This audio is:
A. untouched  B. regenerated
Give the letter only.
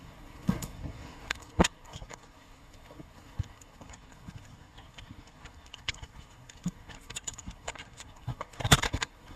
B